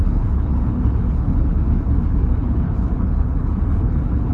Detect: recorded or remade remade